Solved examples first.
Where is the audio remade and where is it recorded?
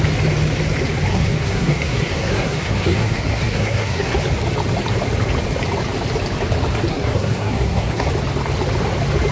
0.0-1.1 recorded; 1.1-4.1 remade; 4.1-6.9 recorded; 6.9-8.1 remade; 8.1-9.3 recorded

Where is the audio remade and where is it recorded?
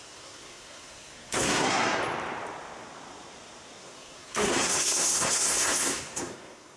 0.0-2.0 remade; 2.0-3.8 recorded; 3.8-6.8 remade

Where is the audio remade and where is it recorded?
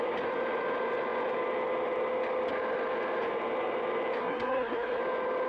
0.0-4.2 recorded; 4.2-5.0 remade; 5.0-5.5 recorded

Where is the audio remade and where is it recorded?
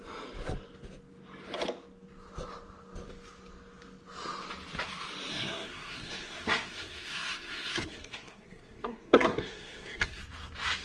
0.0-5.3 recorded; 5.3-10.2 remade; 10.2-10.8 recorded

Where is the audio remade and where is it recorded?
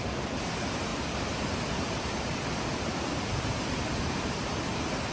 0.0-5.1 recorded